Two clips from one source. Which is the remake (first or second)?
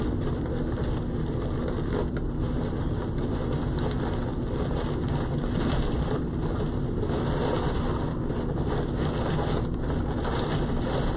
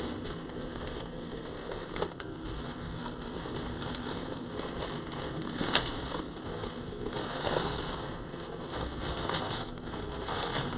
second